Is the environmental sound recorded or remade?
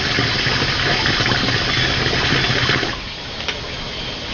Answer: recorded